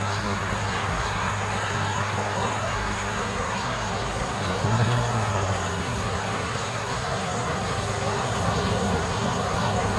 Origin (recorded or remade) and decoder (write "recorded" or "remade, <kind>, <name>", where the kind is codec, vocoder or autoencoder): remade, codec, SNAC